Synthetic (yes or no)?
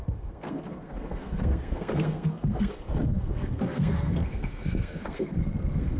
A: yes